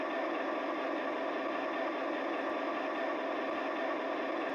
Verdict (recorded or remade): recorded